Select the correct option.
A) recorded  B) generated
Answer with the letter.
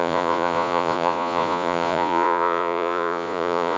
B